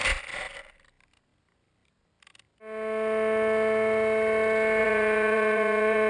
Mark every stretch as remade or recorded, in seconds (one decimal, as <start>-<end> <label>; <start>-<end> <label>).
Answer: 0.0-4.8 recorded; 4.8-6.1 remade